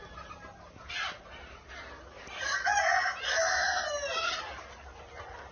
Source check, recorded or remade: recorded